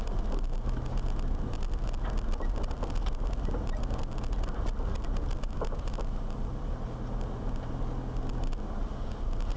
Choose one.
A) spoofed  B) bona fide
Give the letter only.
B